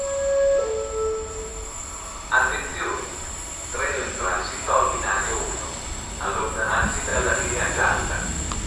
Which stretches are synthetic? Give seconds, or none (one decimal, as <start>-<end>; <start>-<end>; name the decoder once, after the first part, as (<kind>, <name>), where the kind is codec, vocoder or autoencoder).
1.5-2.2 (vocoder, BigVGAN v2); 2.7-3.6; 7.1-8.1